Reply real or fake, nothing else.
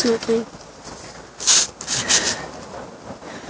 real